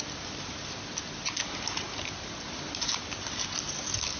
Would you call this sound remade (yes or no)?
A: no